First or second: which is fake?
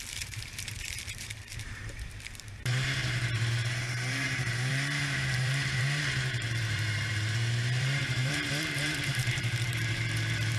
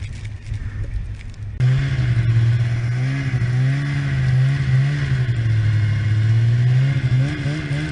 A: first